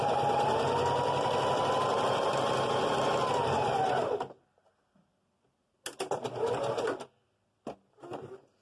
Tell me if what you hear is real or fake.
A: real